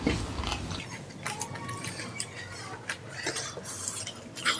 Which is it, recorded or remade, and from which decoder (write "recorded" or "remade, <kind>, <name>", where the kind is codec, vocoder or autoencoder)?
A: recorded